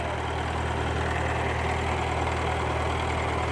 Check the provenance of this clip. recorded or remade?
recorded